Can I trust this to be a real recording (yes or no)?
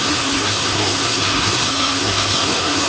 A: no